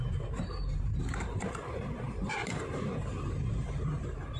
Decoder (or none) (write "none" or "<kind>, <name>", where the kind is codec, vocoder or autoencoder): vocoder, BigVGAN v2